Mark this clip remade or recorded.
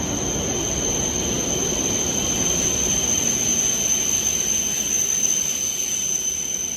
recorded